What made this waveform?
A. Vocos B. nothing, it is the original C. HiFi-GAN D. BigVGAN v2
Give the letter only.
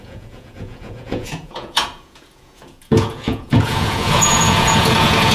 A